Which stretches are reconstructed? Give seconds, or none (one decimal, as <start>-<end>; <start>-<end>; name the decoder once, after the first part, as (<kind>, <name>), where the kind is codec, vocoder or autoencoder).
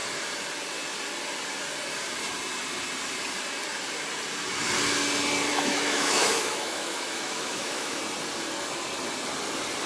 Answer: 5.5-8.0 (autoencoder, DAC-VAE)